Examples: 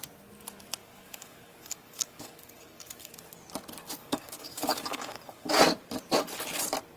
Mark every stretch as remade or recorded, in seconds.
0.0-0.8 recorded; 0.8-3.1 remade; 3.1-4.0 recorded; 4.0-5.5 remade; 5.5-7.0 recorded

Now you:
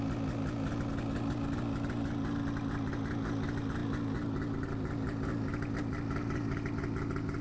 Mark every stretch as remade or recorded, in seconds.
0.0-7.4 recorded

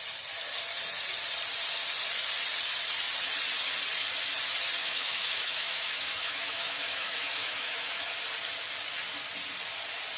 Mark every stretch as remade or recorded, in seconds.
0.0-4.8 recorded; 4.8-8.1 remade; 8.1-10.2 recorded

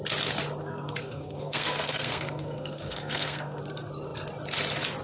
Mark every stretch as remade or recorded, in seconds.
0.0-0.6 recorded; 0.6-3.6 remade; 3.6-5.0 recorded